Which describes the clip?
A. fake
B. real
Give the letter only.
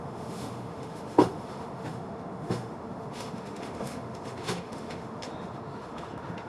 A